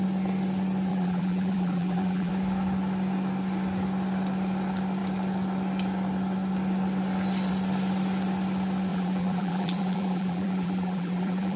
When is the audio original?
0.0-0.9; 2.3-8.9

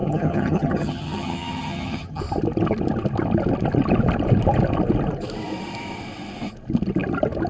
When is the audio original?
2.2-7.5

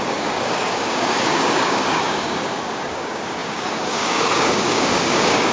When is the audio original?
none

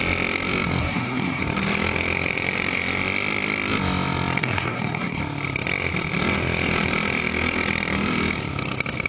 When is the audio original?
0.0-0.8; 1.4-4.4; 5.2-9.1

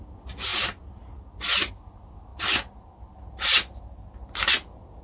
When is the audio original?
0.0-5.0

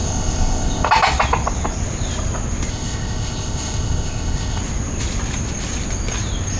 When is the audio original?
0.9-2.7; 4.6-6.6

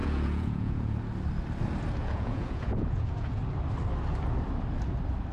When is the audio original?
1.0-2.0; 3.4-5.3